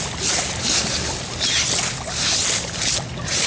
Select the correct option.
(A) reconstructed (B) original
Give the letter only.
B